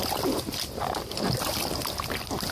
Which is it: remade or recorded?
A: recorded